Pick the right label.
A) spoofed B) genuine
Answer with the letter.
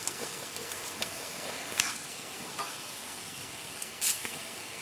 A